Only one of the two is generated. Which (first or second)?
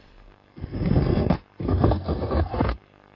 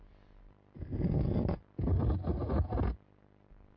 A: first